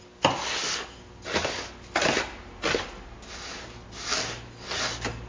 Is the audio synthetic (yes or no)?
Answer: no